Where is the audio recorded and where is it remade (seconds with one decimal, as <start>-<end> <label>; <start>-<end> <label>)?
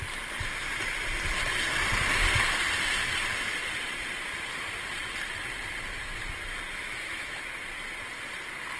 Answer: 0.0-6.8 recorded; 6.8-7.4 remade; 7.4-8.8 recorded